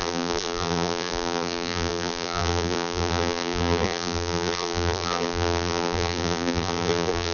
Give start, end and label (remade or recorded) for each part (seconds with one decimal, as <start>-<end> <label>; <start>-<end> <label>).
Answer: 0.0-7.3 remade